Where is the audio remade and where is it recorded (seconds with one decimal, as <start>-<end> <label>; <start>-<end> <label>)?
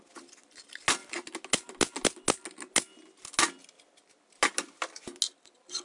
0.0-5.8 recorded